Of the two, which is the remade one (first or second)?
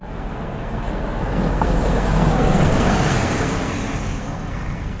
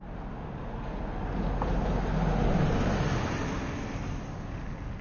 first